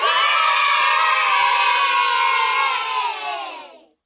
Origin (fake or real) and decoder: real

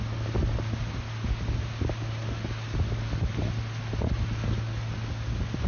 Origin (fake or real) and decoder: real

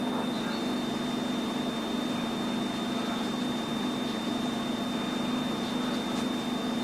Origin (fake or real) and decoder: real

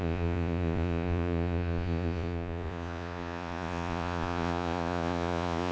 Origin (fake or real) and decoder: fake, vocoder, Vocos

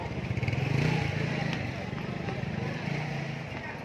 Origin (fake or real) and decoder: real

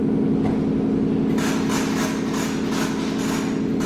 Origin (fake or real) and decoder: real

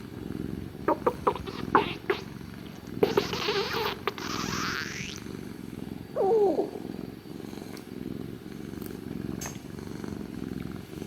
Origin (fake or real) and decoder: real